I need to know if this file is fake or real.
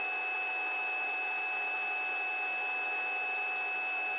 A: real